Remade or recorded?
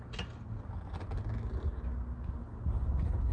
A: recorded